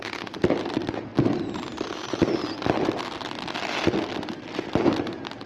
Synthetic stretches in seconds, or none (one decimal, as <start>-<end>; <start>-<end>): none